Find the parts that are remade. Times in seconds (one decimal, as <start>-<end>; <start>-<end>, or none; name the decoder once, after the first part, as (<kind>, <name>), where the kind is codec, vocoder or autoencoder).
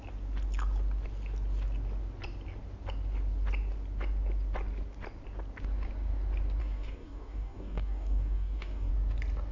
6.6-8.9 (codec, DAC)